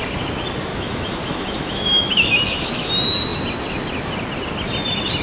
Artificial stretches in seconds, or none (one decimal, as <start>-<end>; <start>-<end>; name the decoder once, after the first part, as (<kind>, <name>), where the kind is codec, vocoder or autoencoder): 0.7-2.9 (autoencoder, DAC-VAE)